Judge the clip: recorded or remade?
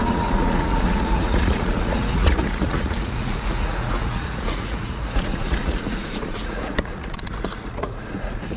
remade